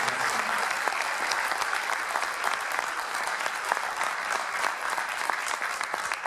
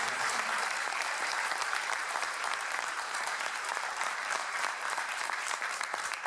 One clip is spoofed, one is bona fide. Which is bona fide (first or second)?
first